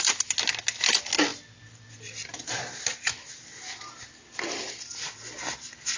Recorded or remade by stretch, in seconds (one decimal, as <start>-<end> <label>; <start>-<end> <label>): 0.0-6.0 recorded